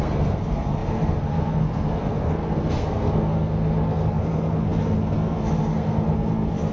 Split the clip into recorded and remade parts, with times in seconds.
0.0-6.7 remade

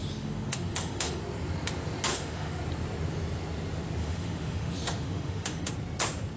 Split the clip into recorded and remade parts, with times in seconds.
0.0-1.2 remade; 1.2-2.1 recorded; 2.1-2.6 remade; 2.6-4.0 recorded; 4.0-5.7 remade; 5.7-6.4 recorded

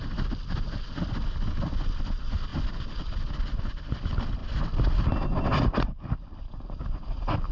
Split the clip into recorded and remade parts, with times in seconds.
0.0-7.5 recorded

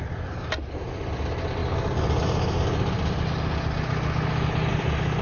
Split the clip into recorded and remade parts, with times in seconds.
0.0-5.2 recorded

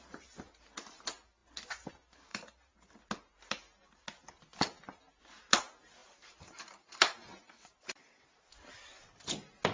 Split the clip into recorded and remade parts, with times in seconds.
0.0-2.3 recorded; 2.3-3.0 remade; 3.0-6.0 recorded; 6.0-8.4 remade; 8.4-9.7 recorded

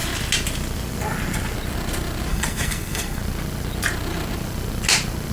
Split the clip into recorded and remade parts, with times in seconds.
0.0-2.3 recorded; 2.3-3.2 remade; 3.2-5.3 recorded

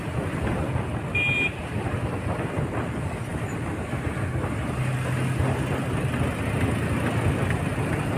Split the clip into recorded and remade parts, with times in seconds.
0.0-8.2 recorded